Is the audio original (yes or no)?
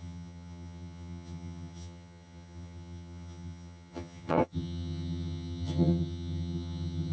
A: no